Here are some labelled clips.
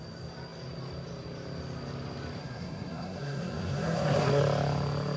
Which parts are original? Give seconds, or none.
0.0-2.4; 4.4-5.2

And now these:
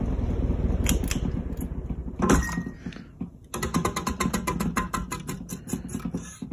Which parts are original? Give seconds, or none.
0.0-6.5

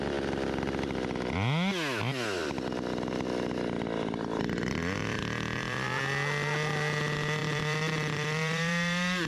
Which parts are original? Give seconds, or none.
0.0-5.0; 6.0-7.4

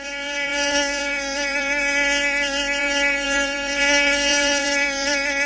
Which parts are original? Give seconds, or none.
none

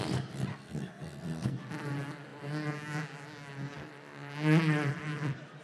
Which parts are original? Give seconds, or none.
0.0-0.5; 1.6-5.6

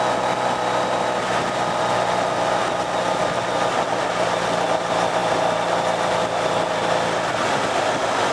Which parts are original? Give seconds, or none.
0.0-8.3